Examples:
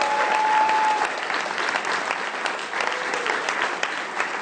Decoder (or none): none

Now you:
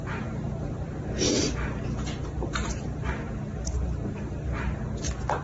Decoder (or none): vocoder, BigVGAN v2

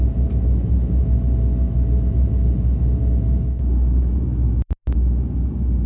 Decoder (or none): none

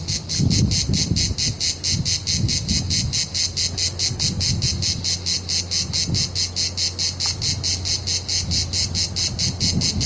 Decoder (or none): none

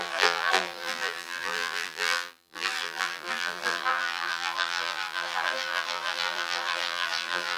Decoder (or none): vocoder, BigVGAN v2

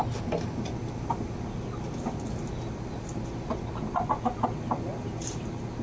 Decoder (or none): none